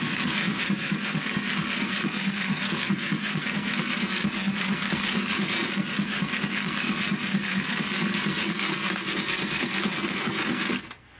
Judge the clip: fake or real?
fake